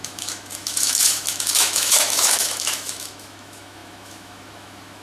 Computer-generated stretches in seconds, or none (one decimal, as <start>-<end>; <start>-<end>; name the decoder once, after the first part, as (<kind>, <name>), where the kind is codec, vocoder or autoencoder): 0.0-5.0 (autoencoder, DAC-VAE)